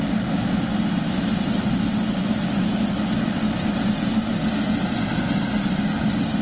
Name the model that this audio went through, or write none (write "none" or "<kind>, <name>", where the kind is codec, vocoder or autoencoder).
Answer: none